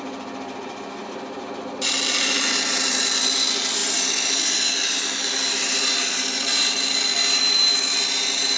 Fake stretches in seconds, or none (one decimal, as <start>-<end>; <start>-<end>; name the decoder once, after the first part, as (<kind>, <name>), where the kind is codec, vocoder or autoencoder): none

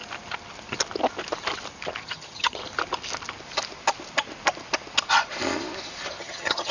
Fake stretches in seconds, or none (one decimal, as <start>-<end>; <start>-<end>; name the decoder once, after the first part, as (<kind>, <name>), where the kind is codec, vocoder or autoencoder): 2.0-2.6 (vocoder, HiFi-GAN); 6.2-6.7